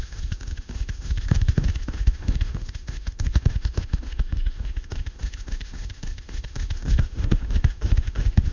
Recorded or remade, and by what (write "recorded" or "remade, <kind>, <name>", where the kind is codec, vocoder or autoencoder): remade, autoencoder, DAC-VAE